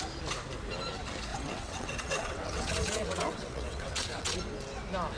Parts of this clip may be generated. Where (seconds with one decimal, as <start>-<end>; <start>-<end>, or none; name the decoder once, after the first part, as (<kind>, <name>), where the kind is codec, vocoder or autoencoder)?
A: 1.3-4.4 (vocoder, WaveNeXt)